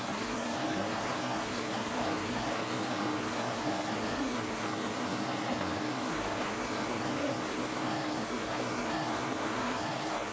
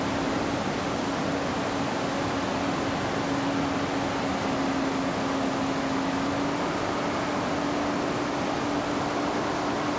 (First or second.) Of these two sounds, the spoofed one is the first